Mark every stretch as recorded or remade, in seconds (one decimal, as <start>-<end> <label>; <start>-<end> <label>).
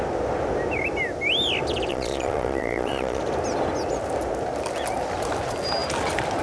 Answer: 0.0-1.9 recorded; 1.9-3.2 remade; 3.2-6.4 recorded